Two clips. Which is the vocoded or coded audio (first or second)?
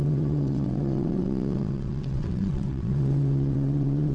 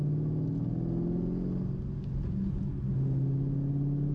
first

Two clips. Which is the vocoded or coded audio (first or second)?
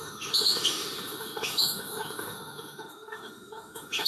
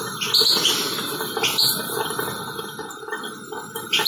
first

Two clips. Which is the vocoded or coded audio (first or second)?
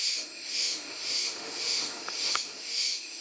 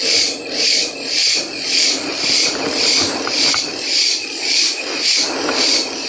first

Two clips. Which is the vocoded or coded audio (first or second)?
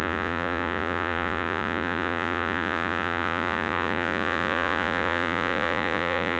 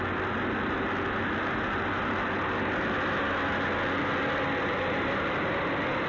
first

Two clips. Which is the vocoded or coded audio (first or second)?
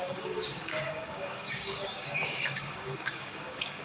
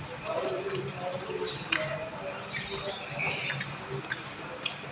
first